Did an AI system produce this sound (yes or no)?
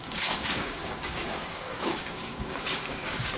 yes